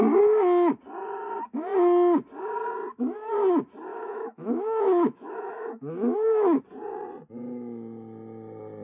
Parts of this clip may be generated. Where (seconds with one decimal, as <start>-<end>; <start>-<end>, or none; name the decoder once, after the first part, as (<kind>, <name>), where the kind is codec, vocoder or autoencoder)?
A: 3.9-6.6 (autoencoder, DAC-VAE)